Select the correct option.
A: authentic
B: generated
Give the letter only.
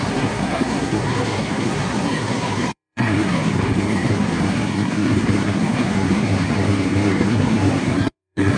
B